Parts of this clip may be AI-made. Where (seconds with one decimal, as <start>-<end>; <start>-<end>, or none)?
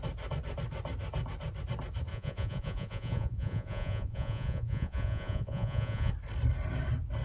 2.1-6.1